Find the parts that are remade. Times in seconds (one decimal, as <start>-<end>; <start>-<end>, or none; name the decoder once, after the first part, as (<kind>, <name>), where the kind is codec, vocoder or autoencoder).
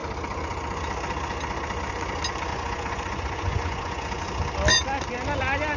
2.5-4.2 (vocoder, Vocos)